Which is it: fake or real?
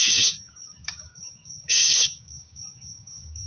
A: fake